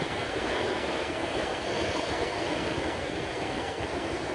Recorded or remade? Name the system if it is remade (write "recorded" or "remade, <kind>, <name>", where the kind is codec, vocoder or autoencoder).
remade, codec, SNAC